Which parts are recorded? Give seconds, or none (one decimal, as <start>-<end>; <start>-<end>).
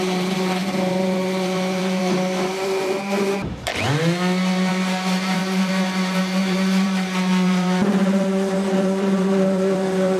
3.7-4.7